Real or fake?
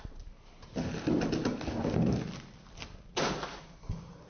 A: real